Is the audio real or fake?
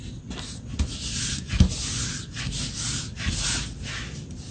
real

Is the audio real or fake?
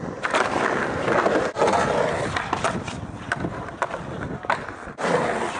real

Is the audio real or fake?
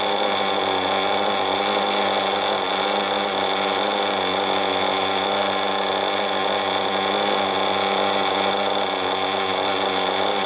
real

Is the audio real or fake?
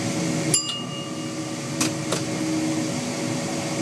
real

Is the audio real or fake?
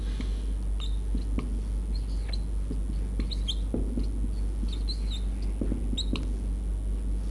real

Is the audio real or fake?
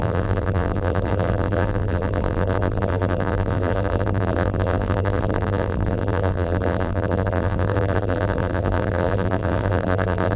fake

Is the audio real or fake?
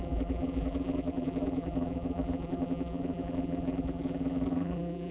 fake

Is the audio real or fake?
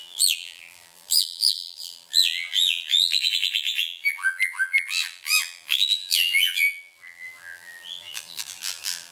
fake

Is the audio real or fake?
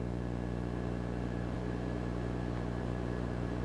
fake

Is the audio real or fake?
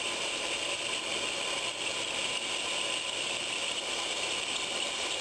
fake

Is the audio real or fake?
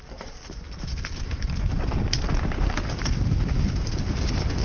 fake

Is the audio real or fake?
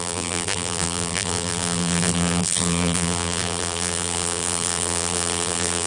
fake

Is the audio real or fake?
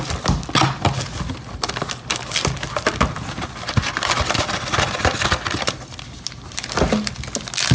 real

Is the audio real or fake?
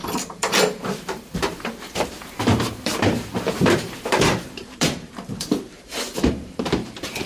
fake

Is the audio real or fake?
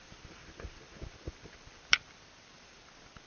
fake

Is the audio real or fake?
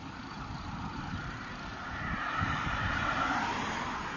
fake